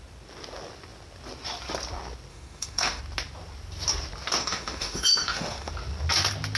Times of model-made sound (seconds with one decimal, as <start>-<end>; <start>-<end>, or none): 2.3-3.0; 4.4-5.7